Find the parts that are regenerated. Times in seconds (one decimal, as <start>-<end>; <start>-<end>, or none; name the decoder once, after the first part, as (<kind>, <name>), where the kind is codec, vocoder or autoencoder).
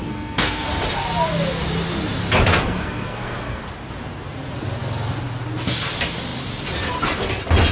0.0-0.7 (codec, SNAC); 2.5-3.6